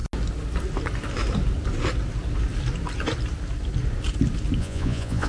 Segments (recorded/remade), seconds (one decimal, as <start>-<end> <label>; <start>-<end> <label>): 0.0-4.6 recorded; 4.6-5.3 remade